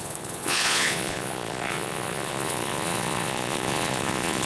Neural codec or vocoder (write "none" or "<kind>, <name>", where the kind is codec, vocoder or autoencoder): vocoder, Vocos